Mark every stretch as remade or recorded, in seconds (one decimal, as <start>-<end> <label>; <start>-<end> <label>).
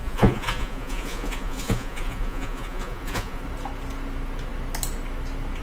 0.0-3.4 remade; 3.4-5.6 recorded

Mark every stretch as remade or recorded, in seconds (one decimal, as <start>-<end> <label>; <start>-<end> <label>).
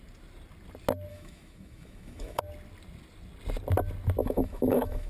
0.0-1.1 recorded; 1.1-2.4 remade; 2.4-4.2 recorded; 4.2-5.1 remade